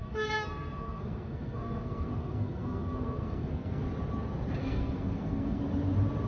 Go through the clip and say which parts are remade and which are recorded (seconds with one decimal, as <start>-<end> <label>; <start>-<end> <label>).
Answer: 0.0-3.8 remade; 3.8-4.6 recorded; 4.6-5.6 remade; 5.6-6.3 recorded